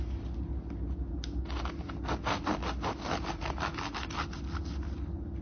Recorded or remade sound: recorded